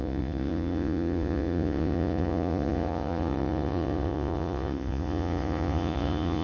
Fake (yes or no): yes